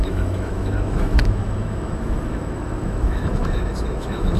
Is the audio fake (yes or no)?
yes